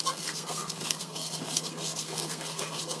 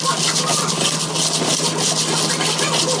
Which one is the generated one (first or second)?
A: first